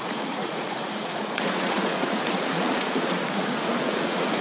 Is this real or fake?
fake